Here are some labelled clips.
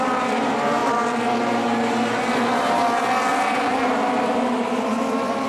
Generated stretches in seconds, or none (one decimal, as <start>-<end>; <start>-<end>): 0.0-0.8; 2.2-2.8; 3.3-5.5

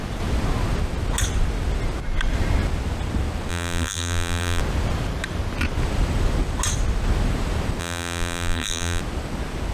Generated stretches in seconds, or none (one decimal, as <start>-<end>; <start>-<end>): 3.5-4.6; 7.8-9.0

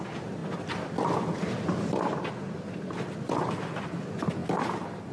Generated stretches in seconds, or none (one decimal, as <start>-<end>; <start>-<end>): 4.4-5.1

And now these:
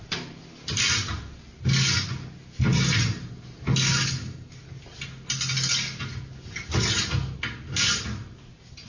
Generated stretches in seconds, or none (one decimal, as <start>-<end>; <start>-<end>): none